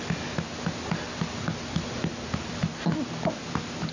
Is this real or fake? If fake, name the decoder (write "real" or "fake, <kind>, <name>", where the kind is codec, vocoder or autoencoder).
real